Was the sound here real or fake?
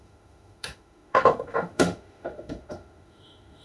fake